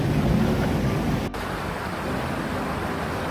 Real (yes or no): yes